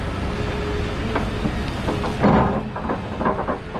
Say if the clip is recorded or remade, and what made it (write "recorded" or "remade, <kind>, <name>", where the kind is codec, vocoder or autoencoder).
recorded